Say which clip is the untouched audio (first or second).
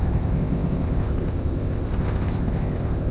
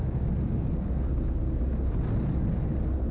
second